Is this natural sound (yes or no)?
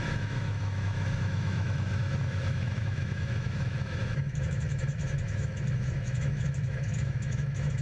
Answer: no